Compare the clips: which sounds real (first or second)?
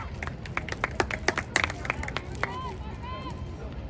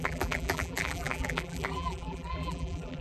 first